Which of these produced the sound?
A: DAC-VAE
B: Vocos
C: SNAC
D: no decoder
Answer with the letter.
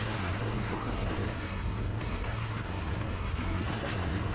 C